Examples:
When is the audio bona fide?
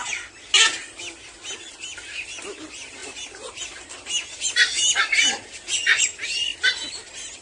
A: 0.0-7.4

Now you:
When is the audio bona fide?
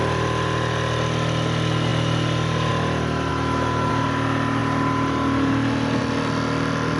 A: 0.0-3.3; 3.9-7.0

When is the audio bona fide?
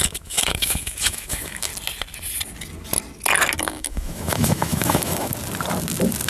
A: 1.7-3.6; 5.3-6.3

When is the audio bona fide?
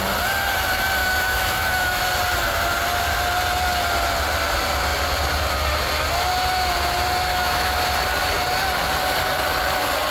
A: 0.0-1.0; 2.0-7.3; 7.8-10.1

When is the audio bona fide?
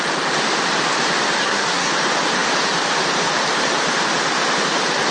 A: 0.0-1.4; 1.9-5.1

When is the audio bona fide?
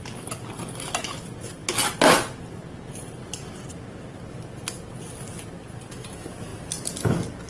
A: 0.0-7.5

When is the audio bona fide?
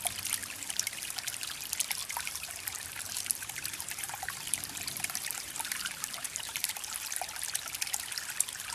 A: 0.0-0.4; 1.1-2.0; 7.1-8.7